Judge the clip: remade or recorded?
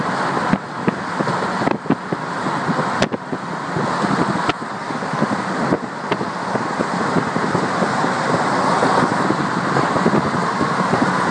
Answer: recorded